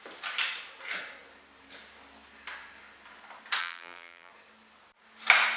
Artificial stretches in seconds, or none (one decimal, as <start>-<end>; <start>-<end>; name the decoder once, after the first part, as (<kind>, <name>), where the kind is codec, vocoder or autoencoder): 3.6-4.3 (vocoder, BigVGAN v2)